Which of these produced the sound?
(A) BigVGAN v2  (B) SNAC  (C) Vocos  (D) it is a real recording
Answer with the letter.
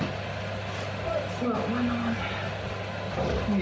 D